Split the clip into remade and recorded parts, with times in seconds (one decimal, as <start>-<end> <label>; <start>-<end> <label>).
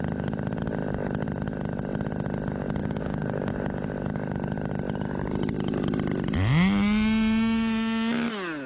0.0-2.8 recorded; 2.8-3.5 remade; 3.5-8.7 recorded